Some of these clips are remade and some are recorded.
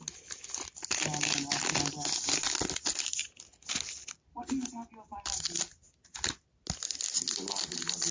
recorded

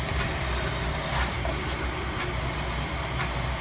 recorded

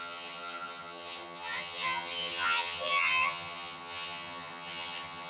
remade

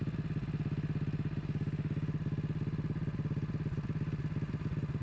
recorded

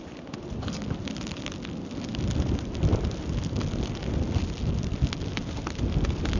recorded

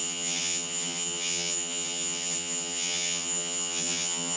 remade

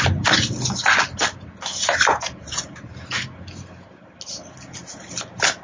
recorded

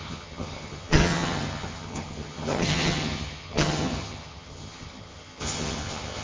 remade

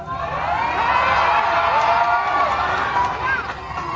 recorded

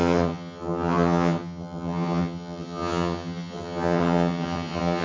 remade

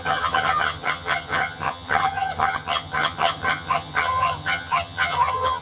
remade